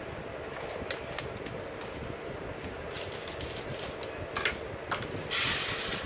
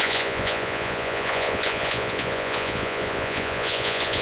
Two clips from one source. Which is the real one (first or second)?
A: first